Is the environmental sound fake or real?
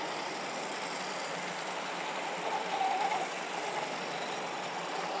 real